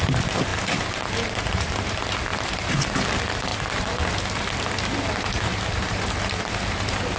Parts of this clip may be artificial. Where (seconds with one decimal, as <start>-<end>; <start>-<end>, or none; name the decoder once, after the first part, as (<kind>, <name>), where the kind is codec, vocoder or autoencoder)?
none